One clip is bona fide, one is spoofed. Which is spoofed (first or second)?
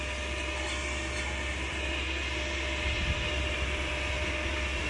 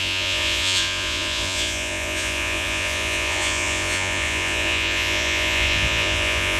second